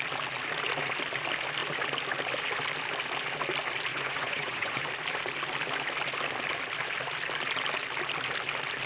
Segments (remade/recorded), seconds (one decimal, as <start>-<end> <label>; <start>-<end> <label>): 0.0-3.9 recorded; 3.9-4.8 remade; 4.8-8.9 recorded